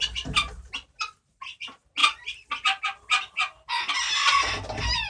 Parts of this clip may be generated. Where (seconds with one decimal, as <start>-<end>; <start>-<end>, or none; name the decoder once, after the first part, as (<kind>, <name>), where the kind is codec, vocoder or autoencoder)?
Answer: none